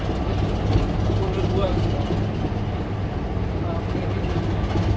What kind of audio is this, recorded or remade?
recorded